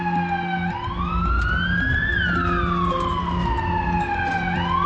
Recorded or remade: recorded